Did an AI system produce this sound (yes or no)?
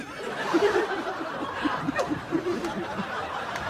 yes